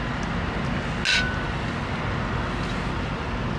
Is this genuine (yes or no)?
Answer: yes